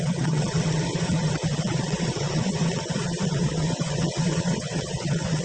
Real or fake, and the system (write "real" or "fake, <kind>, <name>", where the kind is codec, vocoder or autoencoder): fake, vocoder, WaveNeXt